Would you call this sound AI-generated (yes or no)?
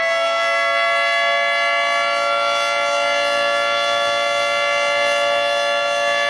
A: no